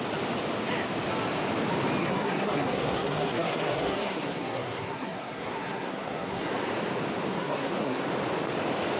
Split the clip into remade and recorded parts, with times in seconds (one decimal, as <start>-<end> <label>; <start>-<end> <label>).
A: 0.0-2.0 recorded; 2.0-6.5 remade; 6.5-7.3 recorded; 7.3-8.1 remade; 8.1-9.0 recorded